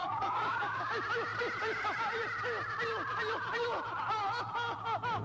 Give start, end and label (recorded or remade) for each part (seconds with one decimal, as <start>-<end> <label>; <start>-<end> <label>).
0.0-0.9 remade; 0.9-5.2 recorded